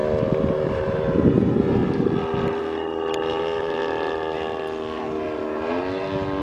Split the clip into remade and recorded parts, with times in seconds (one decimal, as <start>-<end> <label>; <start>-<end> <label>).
0.0-0.5 recorded; 0.5-1.8 remade; 1.8-3.3 recorded; 3.3-3.8 remade; 3.8-6.4 recorded